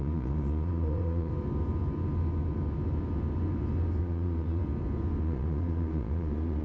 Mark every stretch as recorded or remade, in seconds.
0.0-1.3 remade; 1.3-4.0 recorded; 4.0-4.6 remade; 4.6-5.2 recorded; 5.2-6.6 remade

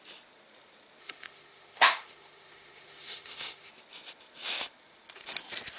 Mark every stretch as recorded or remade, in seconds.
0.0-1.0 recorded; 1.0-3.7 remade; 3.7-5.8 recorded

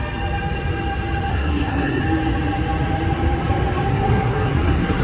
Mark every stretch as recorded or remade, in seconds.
0.0-1.3 recorded; 1.3-2.0 remade; 2.0-3.9 recorded; 3.9-5.0 remade

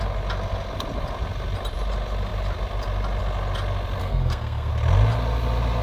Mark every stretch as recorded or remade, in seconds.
0.0-4.0 recorded; 4.0-4.7 remade; 4.7-5.8 recorded